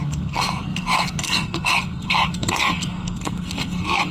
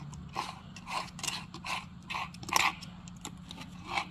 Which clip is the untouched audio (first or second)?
second